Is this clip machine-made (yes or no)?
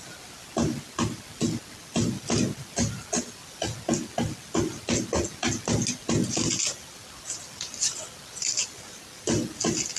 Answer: no